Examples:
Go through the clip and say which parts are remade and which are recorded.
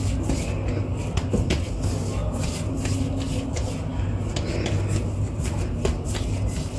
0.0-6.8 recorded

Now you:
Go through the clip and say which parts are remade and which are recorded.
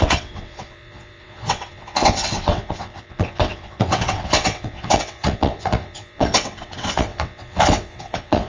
0.0-8.5 remade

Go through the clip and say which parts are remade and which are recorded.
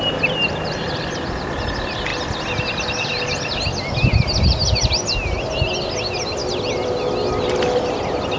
0.0-8.4 recorded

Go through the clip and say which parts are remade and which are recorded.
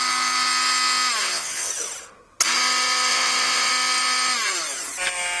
0.0-1.2 recorded; 1.2-1.7 remade; 1.7-3.1 recorded; 3.1-3.7 remade; 3.7-5.4 recorded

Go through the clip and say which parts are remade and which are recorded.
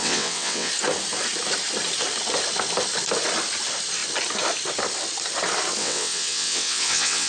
0.0-0.7 remade; 0.7-5.8 recorded; 5.8-7.3 remade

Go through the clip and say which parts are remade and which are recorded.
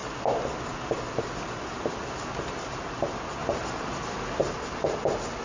0.0-5.4 recorded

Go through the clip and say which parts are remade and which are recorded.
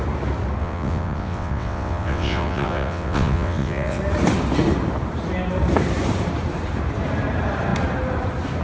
0.0-0.6 recorded; 0.6-4.0 remade; 4.0-8.6 recorded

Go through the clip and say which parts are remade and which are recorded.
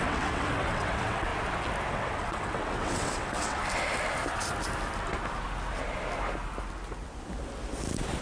0.0-1.3 remade; 1.3-1.9 recorded; 1.9-3.6 remade; 3.6-8.2 recorded